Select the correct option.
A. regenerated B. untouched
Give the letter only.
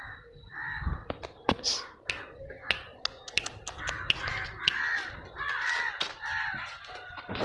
B